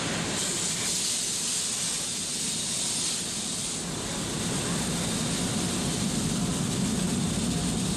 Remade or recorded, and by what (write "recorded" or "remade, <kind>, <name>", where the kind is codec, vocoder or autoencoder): recorded